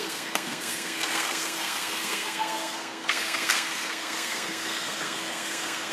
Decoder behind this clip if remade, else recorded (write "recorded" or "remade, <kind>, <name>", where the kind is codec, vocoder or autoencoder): remade, codec, SNAC